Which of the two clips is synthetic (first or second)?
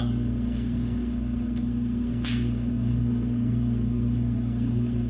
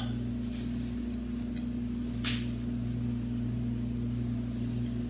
first